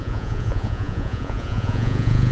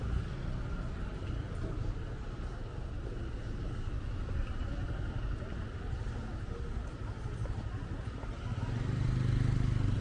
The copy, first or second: first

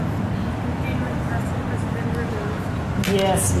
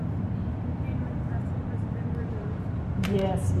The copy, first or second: second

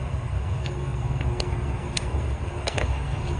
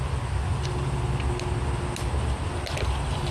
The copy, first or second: first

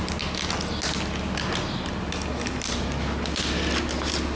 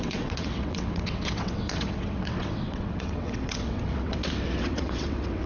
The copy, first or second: second